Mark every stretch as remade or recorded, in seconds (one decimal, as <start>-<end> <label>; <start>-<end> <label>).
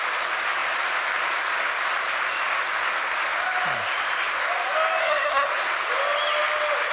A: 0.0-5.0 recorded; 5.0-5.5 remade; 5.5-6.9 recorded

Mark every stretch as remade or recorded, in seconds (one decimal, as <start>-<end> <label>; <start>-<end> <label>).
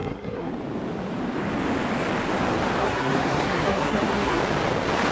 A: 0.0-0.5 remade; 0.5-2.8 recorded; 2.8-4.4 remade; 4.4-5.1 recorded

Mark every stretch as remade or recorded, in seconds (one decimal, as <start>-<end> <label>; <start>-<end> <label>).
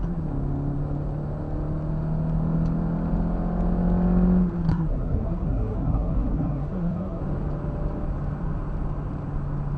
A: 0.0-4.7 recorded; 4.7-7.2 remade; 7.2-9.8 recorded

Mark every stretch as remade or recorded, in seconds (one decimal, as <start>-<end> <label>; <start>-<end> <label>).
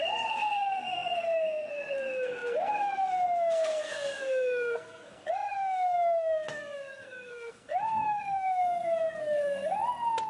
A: 0.0-9.8 remade; 9.8-10.3 recorded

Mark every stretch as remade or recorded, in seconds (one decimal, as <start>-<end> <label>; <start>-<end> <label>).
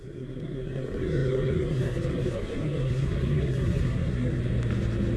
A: 0.0-4.4 remade; 4.4-5.2 recorded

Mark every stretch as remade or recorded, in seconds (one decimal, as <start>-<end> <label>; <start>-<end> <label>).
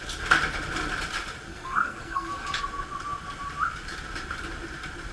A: 0.0-1.5 recorded; 1.5-2.6 remade; 2.6-5.1 recorded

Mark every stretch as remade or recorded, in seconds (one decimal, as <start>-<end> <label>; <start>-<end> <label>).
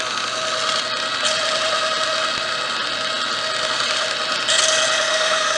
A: 0.0-5.1 recorded; 5.1-5.6 remade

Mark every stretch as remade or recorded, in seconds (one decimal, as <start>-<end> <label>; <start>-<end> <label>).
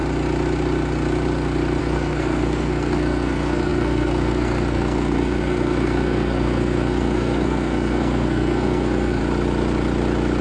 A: 0.0-1.8 recorded; 1.8-9.2 remade; 9.2-10.4 recorded